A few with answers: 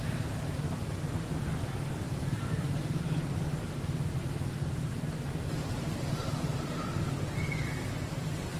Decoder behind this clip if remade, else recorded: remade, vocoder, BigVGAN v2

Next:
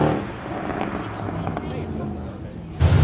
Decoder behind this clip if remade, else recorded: recorded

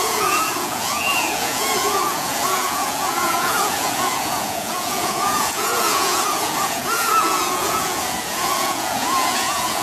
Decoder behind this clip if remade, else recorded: remade, vocoder, Vocos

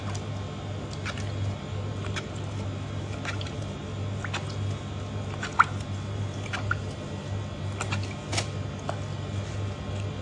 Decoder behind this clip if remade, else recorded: recorded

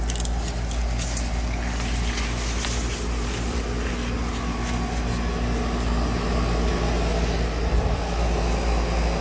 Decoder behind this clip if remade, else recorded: recorded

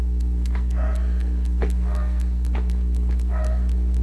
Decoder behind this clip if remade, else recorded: remade, codec, SNAC